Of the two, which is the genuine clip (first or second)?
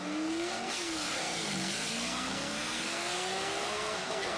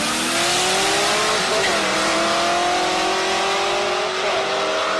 second